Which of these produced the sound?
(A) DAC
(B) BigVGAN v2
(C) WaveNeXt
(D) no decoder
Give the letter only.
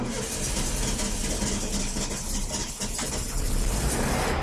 D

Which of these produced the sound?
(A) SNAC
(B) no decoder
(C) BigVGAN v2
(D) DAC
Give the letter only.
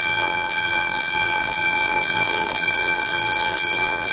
C